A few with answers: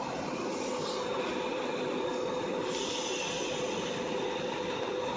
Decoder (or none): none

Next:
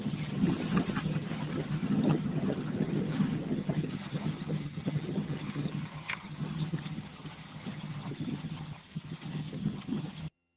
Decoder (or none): vocoder, HiFi-GAN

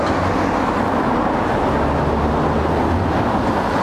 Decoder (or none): none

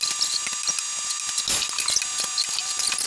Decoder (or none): none